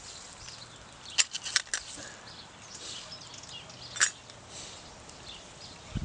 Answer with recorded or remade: recorded